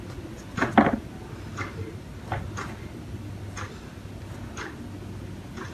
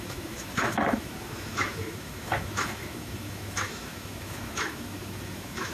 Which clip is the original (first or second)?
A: first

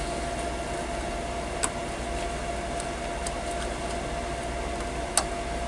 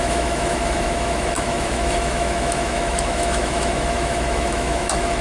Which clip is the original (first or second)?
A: first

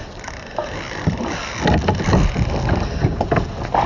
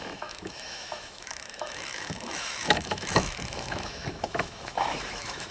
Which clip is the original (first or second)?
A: first